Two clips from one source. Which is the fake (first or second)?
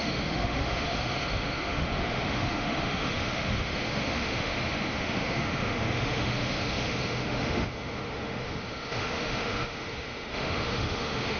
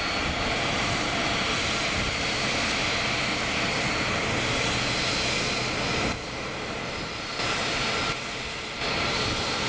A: first